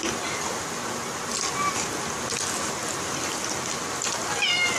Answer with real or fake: real